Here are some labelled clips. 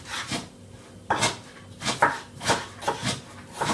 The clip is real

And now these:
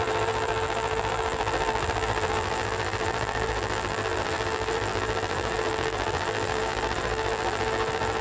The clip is fake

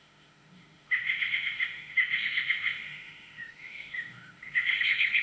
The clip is fake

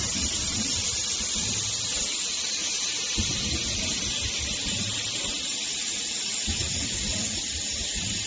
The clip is real